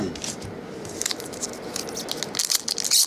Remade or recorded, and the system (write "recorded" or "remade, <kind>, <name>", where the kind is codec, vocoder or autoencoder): recorded